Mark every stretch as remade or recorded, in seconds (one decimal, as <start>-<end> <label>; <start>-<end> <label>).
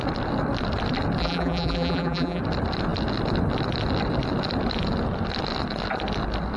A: 0.0-1.2 recorded; 1.2-2.4 remade; 2.4-6.6 recorded